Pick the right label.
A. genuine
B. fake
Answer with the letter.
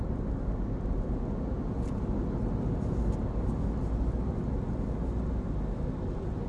A